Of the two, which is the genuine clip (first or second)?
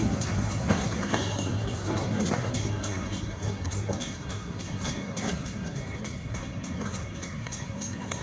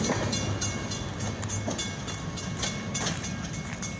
second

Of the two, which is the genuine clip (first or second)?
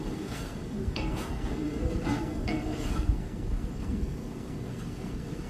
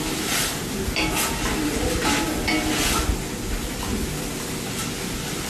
second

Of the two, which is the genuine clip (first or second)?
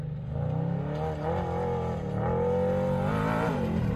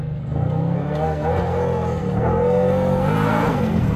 first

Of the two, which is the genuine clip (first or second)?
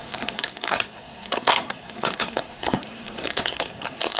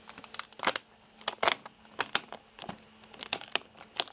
second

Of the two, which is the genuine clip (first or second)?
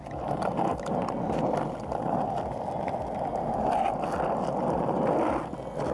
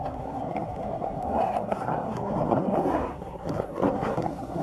first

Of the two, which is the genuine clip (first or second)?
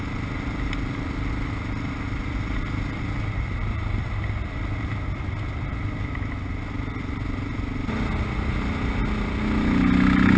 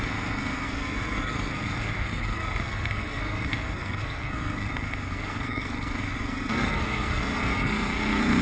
first